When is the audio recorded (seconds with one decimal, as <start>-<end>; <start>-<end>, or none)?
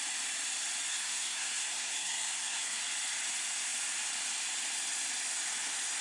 0.0-0.9; 2.8-6.0